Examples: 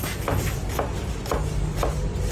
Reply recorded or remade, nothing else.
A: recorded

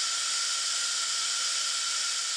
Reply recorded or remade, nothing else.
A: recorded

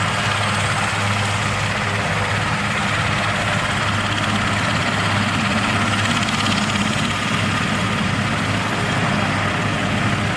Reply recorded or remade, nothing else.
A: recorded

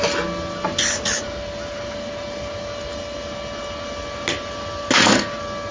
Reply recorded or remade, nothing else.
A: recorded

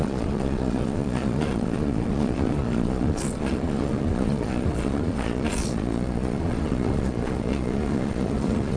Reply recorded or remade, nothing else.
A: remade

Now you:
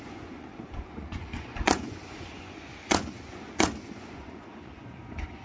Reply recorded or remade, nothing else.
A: remade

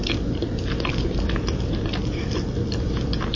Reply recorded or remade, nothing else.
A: recorded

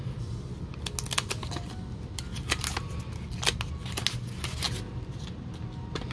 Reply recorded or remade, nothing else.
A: recorded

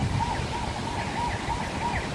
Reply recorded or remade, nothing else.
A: recorded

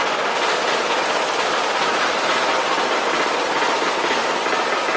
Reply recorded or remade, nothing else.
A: recorded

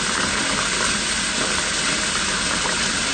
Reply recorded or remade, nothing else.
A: recorded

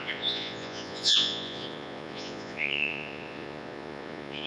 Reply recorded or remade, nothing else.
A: remade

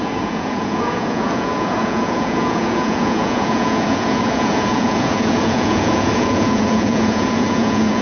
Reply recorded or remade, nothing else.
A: remade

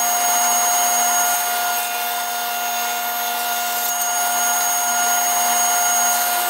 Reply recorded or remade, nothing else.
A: recorded